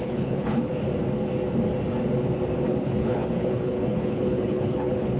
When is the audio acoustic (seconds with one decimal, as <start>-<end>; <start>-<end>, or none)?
0.7-2.7